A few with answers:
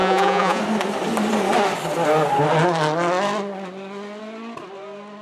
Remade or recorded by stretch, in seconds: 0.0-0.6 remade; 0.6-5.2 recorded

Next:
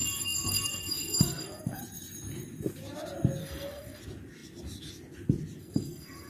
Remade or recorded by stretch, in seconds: 0.0-1.8 remade; 1.8-3.4 recorded; 3.4-4.0 remade; 4.0-5.6 recorded; 5.6-6.3 remade